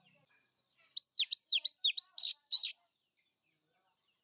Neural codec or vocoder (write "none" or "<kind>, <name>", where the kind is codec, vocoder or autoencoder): vocoder, BigVGAN v2